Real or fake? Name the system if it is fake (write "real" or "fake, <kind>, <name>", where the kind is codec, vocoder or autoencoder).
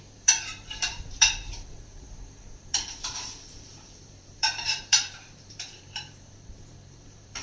fake, vocoder, BigVGAN v2